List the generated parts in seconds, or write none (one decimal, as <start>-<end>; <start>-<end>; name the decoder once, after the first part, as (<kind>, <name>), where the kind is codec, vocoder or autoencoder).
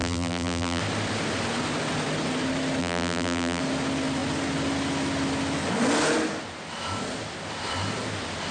0.0-0.8 (vocoder, BigVGAN v2); 2.8-3.6